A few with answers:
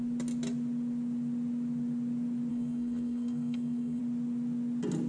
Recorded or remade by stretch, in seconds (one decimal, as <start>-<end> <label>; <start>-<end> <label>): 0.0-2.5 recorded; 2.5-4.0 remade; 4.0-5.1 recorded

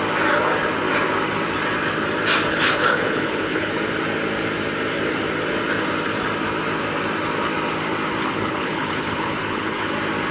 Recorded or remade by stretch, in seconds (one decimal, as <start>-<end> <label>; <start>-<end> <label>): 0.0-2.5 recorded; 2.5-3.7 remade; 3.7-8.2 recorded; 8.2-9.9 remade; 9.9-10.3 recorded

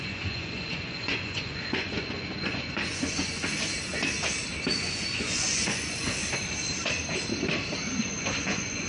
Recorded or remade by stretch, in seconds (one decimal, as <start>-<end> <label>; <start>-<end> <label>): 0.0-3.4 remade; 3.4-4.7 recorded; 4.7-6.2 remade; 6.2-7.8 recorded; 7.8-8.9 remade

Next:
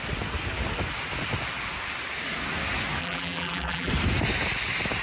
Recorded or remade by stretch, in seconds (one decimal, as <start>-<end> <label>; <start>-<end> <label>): 0.0-3.0 recorded; 3.0-3.9 remade; 3.9-5.0 recorded

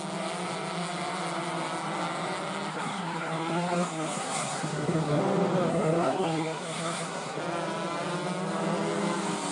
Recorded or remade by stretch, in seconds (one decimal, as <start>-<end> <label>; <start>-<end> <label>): 0.0-2.7 recorded; 2.7-5.2 remade; 5.2-5.7 recorded; 5.7-7.4 remade; 7.4-9.5 recorded